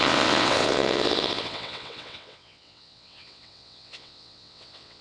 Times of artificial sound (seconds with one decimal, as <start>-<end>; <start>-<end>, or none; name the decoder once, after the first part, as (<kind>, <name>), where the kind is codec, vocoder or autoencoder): 0.0-5.0 (vocoder, WaveNeXt)